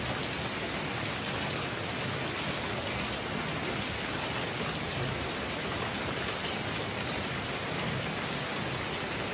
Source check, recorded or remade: recorded